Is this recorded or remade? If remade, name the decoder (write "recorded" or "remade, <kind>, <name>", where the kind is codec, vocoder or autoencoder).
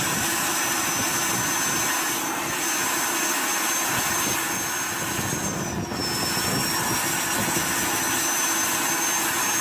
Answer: recorded